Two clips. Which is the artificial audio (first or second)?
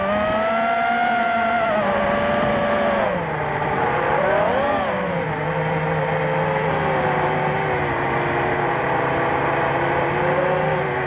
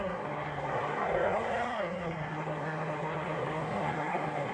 second